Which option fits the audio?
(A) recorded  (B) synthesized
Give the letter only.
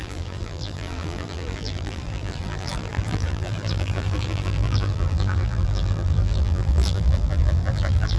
B